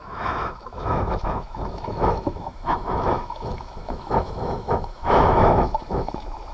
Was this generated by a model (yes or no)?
yes